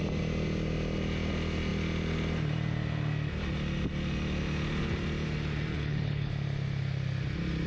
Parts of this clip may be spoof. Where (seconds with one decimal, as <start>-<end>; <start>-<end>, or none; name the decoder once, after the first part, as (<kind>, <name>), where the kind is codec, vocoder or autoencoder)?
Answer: 5.7-6.3 (codec, HILCodec)